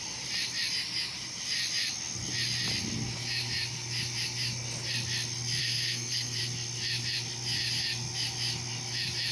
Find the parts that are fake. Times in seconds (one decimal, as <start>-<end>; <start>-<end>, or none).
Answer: 5.6-6.4